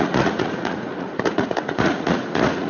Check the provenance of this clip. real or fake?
fake